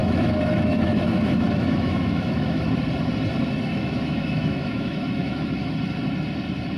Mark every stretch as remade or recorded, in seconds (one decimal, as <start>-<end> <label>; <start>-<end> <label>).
0.0-2.6 remade; 2.6-3.7 recorded; 3.7-5.6 remade; 5.6-6.8 recorded